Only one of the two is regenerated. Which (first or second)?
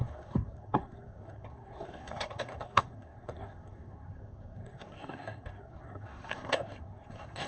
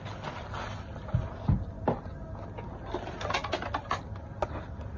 first